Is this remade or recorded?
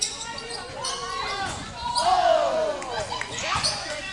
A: remade